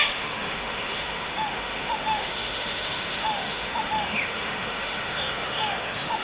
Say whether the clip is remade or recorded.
remade